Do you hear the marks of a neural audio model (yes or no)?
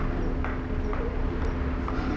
no